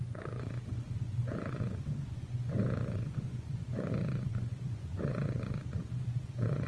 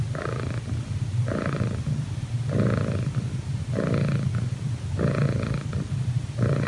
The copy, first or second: first